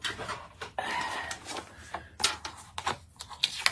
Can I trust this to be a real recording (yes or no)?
yes